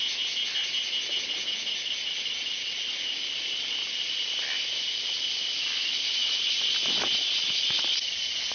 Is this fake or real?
real